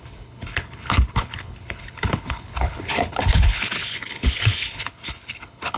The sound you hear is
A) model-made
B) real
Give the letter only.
A